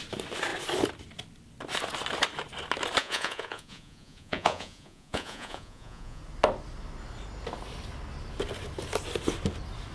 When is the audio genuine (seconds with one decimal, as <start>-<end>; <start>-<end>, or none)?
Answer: 0.0-3.0; 6.2-9.9